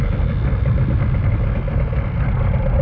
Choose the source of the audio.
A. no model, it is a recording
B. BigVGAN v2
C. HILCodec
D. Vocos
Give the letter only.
A